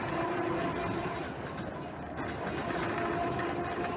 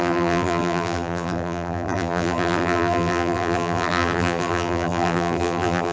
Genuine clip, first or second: first